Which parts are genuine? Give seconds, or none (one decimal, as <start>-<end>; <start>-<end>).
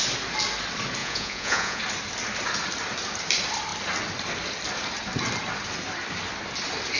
0.0-1.0; 1.8-7.0